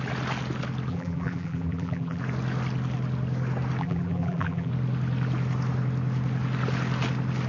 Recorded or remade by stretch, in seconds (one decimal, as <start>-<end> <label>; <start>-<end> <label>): 0.0-0.9 recorded; 0.9-2.2 remade; 2.2-3.8 recorded; 3.8-4.7 remade; 4.7-7.5 recorded